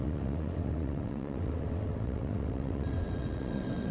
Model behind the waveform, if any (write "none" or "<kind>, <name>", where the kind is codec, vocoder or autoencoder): vocoder, WaveNeXt